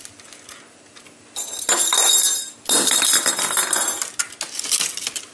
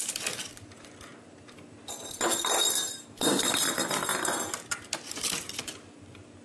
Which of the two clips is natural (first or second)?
first